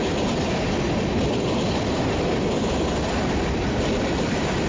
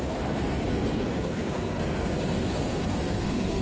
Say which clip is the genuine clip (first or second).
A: first